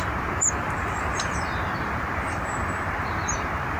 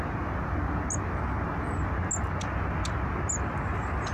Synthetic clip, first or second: first